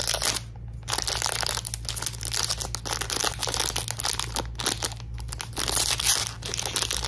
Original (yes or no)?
yes